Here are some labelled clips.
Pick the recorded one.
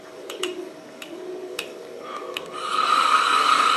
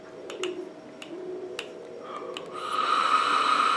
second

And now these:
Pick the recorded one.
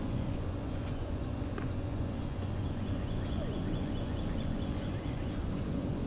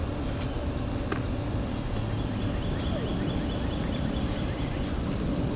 second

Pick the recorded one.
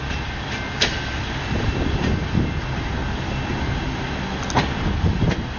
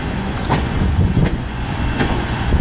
first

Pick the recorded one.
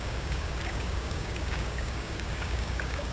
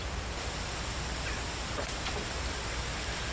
second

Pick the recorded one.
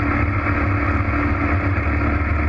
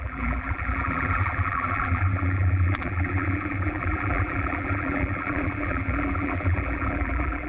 first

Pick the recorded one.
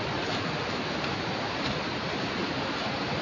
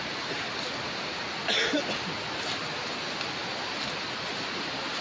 second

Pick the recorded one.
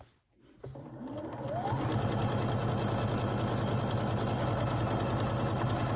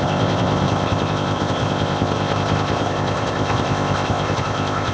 first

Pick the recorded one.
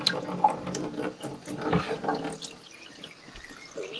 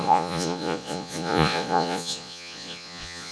first